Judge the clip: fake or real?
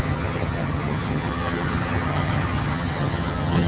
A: fake